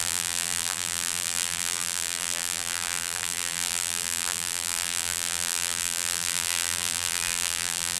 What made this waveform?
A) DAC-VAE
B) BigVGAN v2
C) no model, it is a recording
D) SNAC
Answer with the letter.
B